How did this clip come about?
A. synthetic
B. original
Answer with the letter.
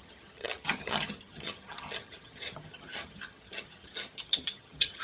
A